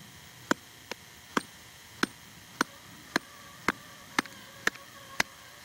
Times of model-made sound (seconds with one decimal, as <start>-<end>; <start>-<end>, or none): 1.3-2.0

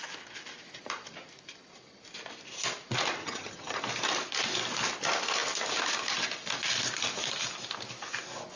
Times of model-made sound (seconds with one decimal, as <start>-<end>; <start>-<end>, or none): 3.2-3.8

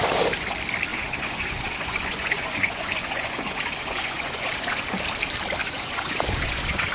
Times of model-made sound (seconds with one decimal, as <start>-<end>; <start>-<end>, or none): 0.9-4.8; 5.6-6.9